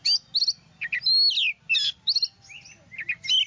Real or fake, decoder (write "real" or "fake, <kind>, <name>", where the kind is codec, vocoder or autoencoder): real